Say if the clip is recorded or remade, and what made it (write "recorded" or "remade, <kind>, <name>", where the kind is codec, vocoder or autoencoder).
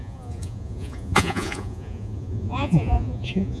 remade, vocoder, Vocos